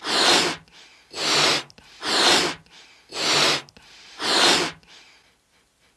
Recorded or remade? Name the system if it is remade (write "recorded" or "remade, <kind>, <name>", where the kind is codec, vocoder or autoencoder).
recorded